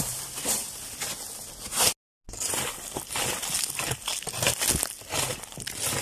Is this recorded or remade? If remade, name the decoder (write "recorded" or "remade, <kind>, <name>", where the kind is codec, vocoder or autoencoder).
recorded